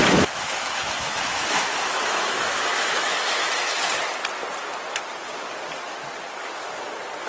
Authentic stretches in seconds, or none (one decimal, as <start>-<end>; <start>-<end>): 3.8-7.3